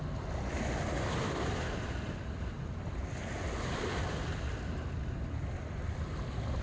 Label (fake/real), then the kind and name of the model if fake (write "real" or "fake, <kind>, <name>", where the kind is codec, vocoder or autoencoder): real